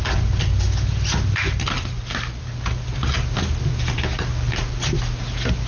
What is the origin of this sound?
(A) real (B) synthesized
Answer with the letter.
A